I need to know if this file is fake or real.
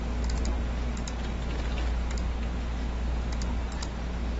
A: real